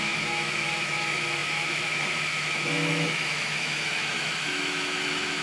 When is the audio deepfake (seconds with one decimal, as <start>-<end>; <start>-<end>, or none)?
0.0-5.4